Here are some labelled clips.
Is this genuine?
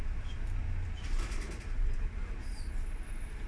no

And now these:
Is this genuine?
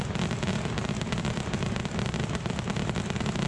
yes